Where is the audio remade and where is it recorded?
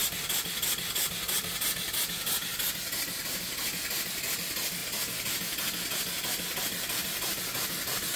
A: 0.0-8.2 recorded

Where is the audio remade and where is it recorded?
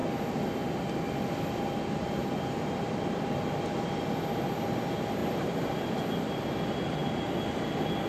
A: 0.0-5.2 recorded; 5.2-5.8 remade; 5.8-7.0 recorded; 7.0-7.6 remade; 7.6-8.1 recorded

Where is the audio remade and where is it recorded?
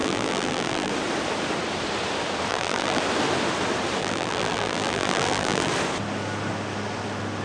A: 0.0-0.9 remade; 0.9-2.5 recorded; 2.5-3.0 remade; 3.0-4.0 recorded; 4.0-5.7 remade; 5.7-7.4 recorded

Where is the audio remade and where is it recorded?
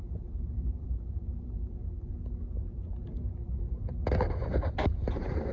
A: 0.0-1.8 remade; 1.8-5.1 recorded; 5.1-5.5 remade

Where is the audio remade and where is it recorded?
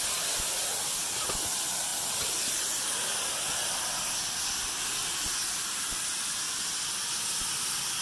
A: 0.0-1.9 recorded; 1.9-3.9 remade; 3.9-8.0 recorded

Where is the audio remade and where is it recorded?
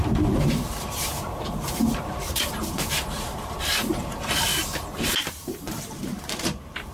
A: 0.0-4.5 remade; 4.5-5.2 recorded; 5.2-6.9 remade